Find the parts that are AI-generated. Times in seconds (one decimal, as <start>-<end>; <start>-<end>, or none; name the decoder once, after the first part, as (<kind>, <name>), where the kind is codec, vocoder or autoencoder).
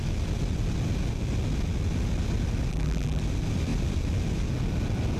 2.7-3.2 (vocoder, BigVGAN v2)